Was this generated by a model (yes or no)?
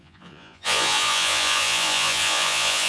yes